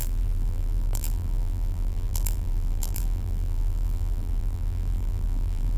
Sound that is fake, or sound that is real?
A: fake